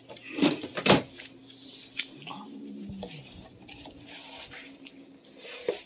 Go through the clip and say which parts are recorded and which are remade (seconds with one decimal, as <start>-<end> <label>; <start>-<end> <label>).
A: 0.0-5.9 recorded